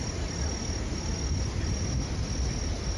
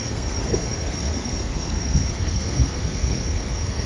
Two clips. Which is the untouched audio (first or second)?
first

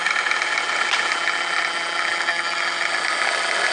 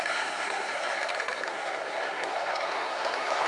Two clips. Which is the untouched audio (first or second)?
first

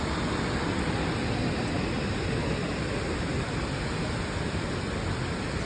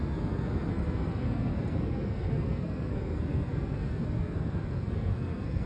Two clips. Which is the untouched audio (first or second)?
first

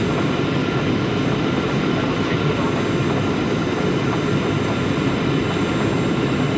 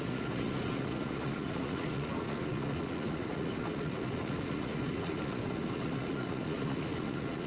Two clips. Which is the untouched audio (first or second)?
first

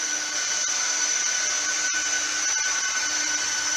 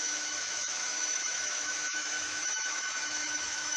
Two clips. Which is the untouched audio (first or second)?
first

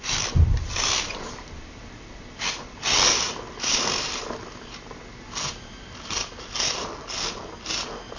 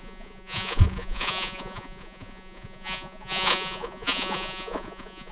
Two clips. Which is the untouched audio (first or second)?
first